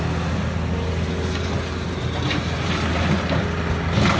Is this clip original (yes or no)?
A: yes